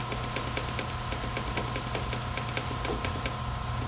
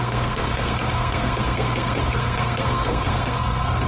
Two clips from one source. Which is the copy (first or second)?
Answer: second